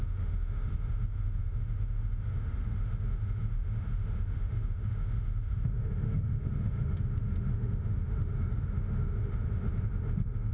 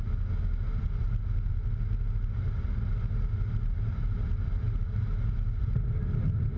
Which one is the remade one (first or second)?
first